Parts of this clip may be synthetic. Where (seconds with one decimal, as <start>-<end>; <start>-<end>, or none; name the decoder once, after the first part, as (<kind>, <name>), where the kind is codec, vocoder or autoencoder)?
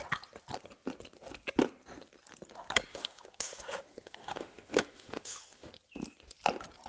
2.9-5.7 (autoencoder, DAC-VAE)